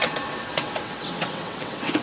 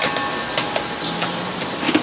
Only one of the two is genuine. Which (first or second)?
second